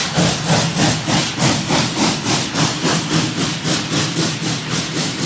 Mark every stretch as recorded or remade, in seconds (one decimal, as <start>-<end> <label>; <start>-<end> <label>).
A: 0.0-5.3 recorded